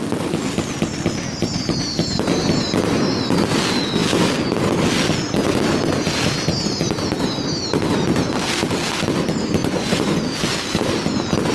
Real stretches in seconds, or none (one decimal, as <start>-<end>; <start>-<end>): 0.0-9.6; 10.2-11.5